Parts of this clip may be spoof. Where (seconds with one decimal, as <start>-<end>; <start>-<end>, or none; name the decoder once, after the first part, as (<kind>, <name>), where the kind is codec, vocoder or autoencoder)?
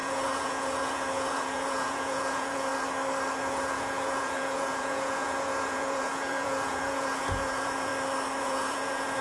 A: 0.0-2.7 (vocoder, Vocos); 3.4-7.9; 8.4-9.2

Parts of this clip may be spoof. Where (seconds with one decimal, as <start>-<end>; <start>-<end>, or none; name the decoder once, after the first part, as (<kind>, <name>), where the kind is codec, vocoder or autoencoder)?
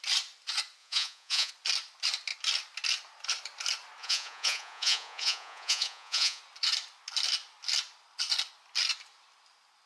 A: 0.8-1.5 (vocoder, Vocos); 4.0-6.4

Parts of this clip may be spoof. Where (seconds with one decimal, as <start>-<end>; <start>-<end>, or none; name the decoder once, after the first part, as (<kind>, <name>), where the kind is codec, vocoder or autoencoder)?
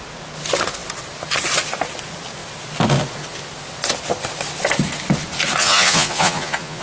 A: 5.6-6.8 (vocoder, Vocos)